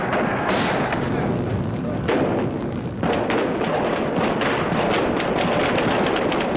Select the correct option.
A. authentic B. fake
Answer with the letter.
A